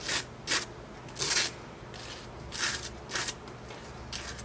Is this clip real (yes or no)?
yes